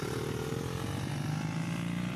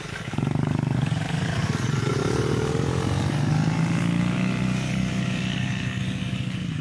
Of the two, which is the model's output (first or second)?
second